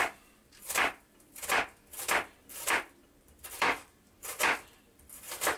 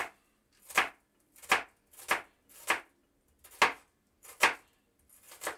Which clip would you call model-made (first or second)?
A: first